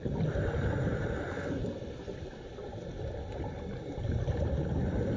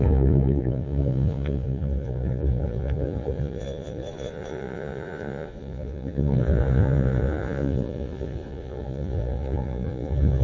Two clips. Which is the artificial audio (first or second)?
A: second